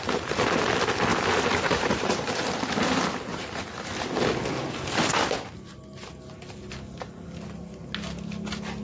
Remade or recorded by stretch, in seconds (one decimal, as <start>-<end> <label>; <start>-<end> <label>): 0.0-1.1 recorded; 1.1-2.3 remade; 2.3-8.8 recorded

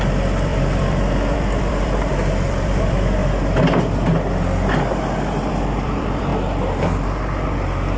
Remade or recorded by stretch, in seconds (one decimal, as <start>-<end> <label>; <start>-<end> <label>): 0.0-3.2 remade; 3.2-5.5 recorded; 5.5-6.3 remade; 6.3-8.0 recorded

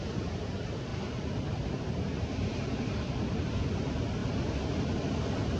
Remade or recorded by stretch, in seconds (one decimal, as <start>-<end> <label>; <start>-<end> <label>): 0.0-0.9 recorded; 0.9-3.5 remade; 3.5-5.6 recorded

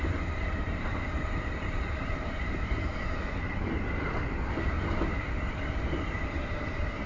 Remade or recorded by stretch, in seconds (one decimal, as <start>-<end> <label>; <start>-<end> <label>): 0.0-2.9 remade; 2.9-5.5 recorded; 5.5-7.1 remade

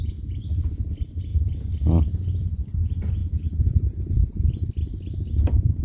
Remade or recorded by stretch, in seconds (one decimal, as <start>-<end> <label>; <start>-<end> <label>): 0.0-3.2 recorded; 3.2-4.1 remade; 4.1-5.8 recorded

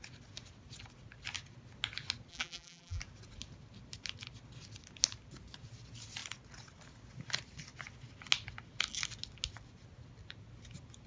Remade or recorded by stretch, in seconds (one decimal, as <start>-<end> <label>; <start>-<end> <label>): 0.0-2.3 recorded; 2.3-3.0 remade; 3.0-11.1 recorded

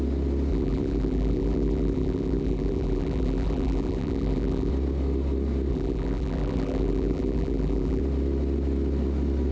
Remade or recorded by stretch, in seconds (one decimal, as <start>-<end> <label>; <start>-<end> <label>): 0.0-0.5 recorded; 0.5-4.7 remade; 4.7-5.7 recorded; 5.7-8.0 remade; 8.0-9.5 recorded

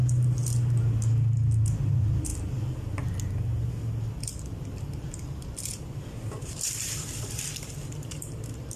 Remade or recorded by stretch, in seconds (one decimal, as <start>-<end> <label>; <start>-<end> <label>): 0.0-0.4 remade; 0.4-1.9 recorded; 1.9-2.3 remade; 2.3-3.7 recorded; 3.7-8.8 remade